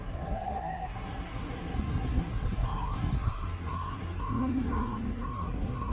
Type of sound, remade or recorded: remade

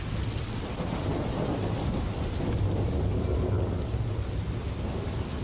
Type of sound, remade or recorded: recorded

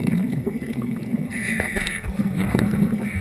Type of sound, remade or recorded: remade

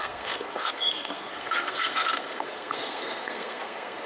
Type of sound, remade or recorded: remade